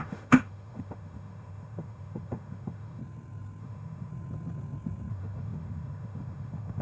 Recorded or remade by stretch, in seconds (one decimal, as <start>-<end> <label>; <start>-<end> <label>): 0.0-3.0 remade; 3.0-3.6 recorded; 3.6-4.1 remade; 4.1-5.1 recorded; 5.1-6.8 remade